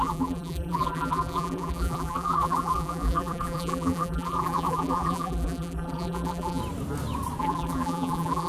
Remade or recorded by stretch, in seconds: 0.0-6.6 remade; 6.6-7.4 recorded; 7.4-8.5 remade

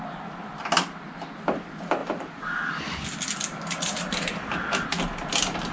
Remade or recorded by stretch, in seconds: 0.0-2.0 recorded; 2.0-2.7 remade; 2.7-3.5 recorded; 3.5-4.3 remade; 4.3-5.7 recorded

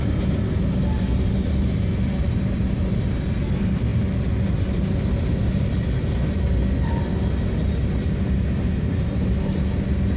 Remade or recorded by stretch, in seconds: 0.0-10.2 recorded

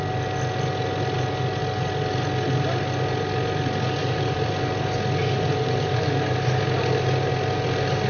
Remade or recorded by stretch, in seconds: 0.0-4.0 recorded; 4.0-4.5 remade; 4.5-5.2 recorded; 5.2-6.6 remade; 6.6-8.1 recorded

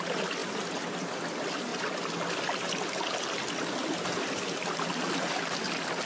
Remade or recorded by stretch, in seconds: 0.0-6.1 recorded

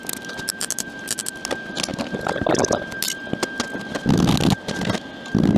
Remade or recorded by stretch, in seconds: 0.0-5.6 recorded

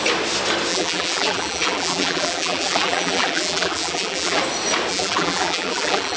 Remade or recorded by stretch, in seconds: 0.0-0.7 recorded; 0.7-4.4 remade; 4.4-4.9 recorded; 4.9-6.2 remade

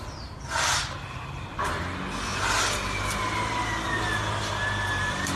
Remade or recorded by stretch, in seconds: 0.0-5.4 recorded